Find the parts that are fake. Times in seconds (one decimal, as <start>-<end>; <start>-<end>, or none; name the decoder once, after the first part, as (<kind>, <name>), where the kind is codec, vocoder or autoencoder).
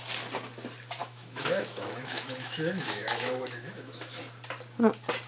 1.0-4.2 (autoencoder, DAC-VAE)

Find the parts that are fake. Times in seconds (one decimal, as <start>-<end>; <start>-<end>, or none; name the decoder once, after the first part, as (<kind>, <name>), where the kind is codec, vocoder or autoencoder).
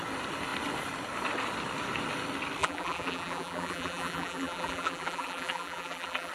2.6-6.3 (vocoder, BigVGAN v2)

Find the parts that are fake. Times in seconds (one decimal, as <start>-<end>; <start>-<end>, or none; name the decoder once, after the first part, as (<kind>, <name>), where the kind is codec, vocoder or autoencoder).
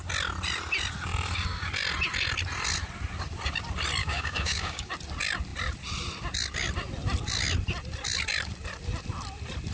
4.0-4.9 (codec, DAC)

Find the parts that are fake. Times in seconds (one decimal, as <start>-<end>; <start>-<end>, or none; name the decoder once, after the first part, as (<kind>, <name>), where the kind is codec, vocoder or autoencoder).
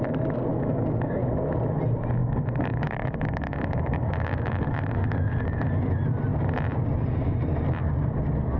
0.5-1.2 (codec, DAC); 2.2-5.7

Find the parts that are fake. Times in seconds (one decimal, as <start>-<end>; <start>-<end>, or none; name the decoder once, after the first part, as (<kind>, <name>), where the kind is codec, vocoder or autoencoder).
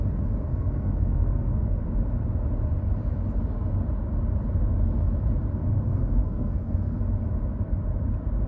0.5-1.8 (codec, SNAC); 5.9-7.0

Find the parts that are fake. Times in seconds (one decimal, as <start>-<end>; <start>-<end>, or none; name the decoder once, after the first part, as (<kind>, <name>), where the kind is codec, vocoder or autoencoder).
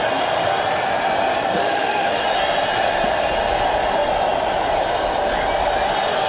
1.6-2.2 (autoencoder, DAC-VAE)